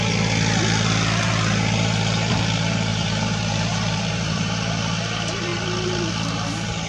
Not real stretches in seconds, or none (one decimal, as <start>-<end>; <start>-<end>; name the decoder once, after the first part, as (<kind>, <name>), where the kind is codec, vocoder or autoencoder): 2.9-4.7 (vocoder, BigVGAN v2)